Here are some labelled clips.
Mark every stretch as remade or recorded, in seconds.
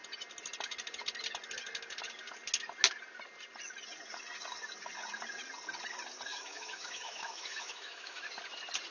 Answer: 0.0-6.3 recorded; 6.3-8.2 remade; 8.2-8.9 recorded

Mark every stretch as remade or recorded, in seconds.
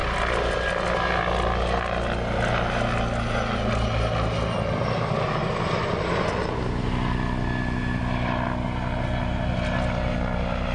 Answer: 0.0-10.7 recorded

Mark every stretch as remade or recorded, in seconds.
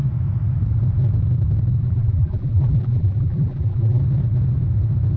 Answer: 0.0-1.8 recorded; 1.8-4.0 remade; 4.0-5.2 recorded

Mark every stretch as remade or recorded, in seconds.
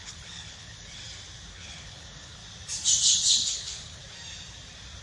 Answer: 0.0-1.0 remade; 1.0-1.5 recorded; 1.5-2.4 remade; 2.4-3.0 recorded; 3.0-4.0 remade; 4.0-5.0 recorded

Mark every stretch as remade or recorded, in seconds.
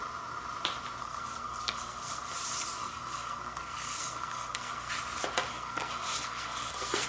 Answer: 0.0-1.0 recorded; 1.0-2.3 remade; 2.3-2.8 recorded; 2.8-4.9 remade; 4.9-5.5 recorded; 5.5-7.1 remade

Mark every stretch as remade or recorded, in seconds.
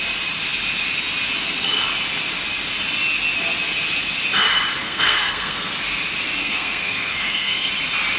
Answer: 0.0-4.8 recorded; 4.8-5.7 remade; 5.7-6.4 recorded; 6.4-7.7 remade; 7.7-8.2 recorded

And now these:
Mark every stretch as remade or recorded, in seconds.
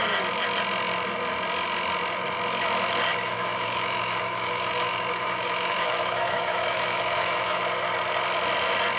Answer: 0.0-3.1 recorded; 3.1-7.6 remade; 7.6-9.0 recorded